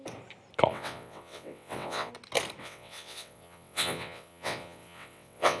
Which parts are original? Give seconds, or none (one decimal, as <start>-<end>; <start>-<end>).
0.0-0.7; 2.1-2.6